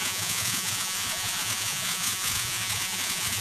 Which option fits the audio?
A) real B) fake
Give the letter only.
B